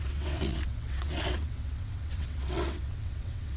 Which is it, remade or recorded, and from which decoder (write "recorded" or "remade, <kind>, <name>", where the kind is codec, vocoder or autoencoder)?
remade, vocoder, WaveNeXt